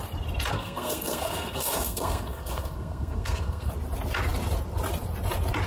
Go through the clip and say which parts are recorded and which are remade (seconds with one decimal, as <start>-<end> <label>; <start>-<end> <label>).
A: 0.0-0.5 recorded; 0.5-3.7 remade; 3.7-5.7 recorded